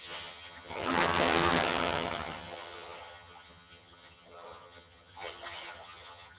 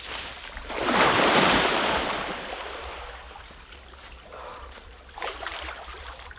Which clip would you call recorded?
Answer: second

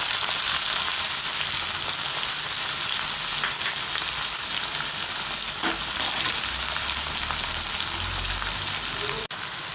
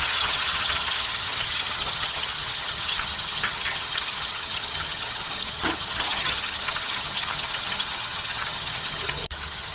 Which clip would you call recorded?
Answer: first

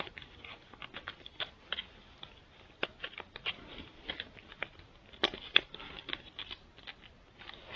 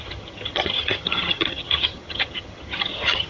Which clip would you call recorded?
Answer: first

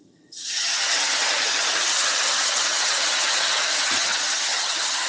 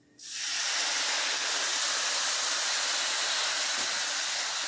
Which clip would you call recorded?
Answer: second